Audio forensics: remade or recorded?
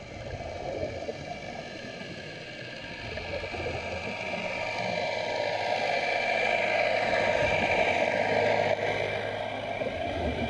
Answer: recorded